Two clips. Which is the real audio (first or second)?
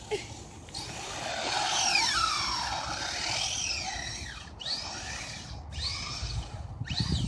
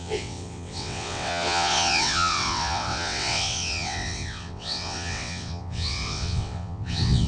first